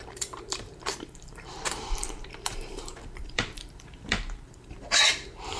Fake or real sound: fake